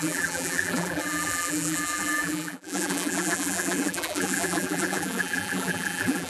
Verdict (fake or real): fake